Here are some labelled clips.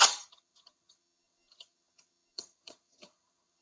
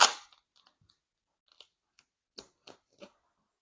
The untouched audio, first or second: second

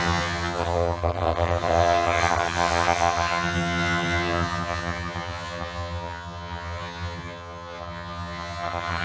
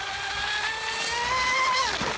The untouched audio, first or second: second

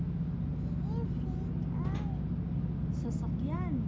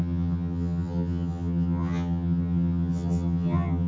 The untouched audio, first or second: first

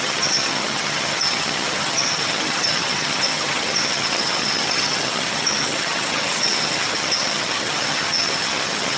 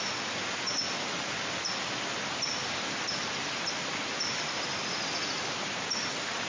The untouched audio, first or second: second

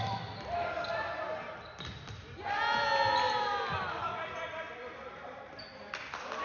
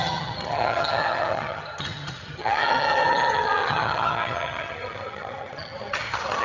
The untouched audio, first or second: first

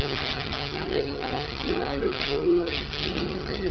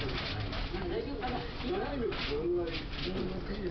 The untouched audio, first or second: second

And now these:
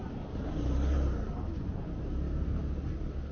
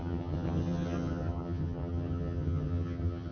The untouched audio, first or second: first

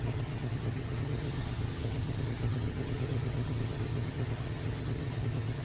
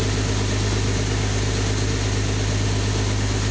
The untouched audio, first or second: second